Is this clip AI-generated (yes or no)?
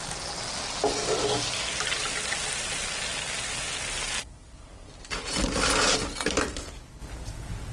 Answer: no